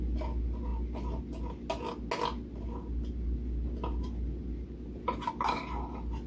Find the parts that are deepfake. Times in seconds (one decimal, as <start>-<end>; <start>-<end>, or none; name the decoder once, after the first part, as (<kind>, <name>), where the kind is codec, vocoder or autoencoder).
none